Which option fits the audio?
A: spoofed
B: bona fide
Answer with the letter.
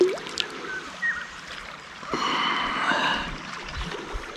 A